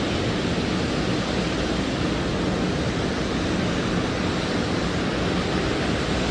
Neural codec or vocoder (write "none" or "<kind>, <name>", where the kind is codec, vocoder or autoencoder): none